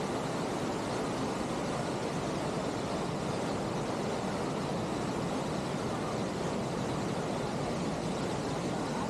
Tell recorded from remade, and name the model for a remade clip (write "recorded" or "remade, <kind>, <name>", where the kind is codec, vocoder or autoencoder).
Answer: recorded